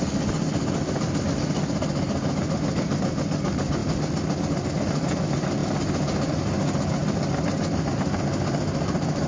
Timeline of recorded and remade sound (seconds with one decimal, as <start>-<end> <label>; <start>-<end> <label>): 0.0-9.3 recorded